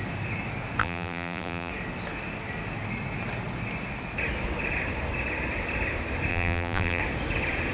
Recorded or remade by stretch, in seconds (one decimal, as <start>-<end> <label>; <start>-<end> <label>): 0.0-0.8 recorded; 0.8-1.7 remade; 1.7-6.3 recorded; 6.3-7.0 remade; 7.0-7.7 recorded